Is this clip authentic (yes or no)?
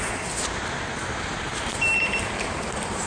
no